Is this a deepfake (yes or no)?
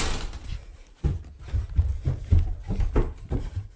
no